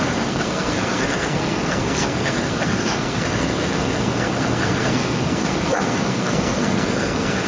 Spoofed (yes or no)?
yes